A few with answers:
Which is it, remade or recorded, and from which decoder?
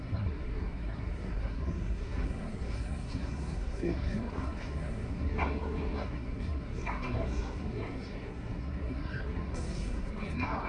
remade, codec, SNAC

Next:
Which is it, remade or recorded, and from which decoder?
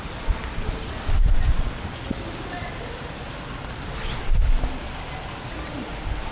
recorded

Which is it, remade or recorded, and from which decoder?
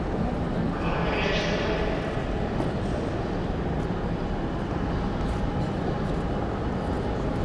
recorded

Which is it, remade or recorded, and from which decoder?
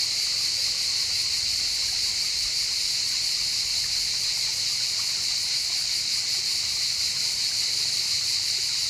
recorded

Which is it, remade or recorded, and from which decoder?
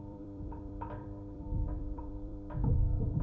remade, vocoder, BigVGAN v2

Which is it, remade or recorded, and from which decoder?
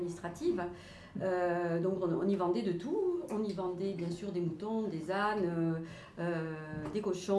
recorded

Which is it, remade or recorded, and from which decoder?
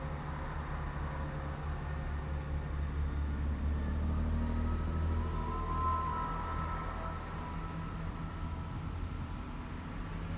recorded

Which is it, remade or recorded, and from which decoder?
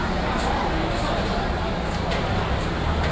recorded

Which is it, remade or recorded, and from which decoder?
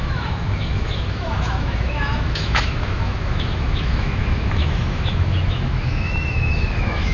remade, autoencoder, DAC-VAE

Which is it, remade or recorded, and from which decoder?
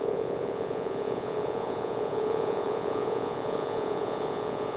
remade, vocoder, Vocos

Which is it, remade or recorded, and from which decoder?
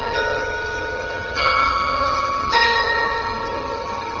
remade, vocoder, HiFi-GAN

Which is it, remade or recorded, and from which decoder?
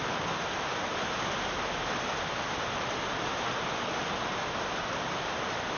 recorded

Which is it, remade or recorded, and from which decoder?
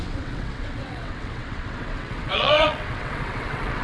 remade, vocoder, WaveNeXt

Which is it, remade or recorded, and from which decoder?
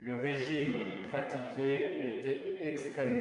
remade, codec, SNAC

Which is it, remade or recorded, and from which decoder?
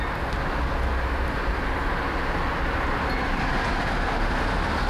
recorded